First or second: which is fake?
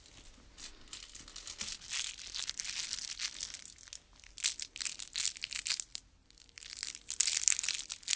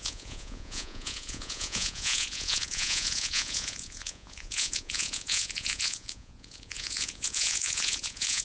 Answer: second